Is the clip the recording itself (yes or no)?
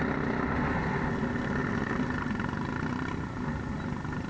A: yes